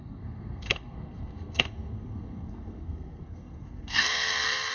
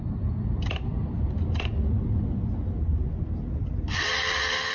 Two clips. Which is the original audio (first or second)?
second